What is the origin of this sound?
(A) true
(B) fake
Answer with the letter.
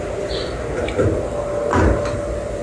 A